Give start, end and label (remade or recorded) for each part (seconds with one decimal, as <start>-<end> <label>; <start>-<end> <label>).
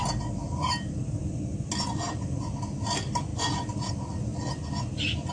0.0-5.3 recorded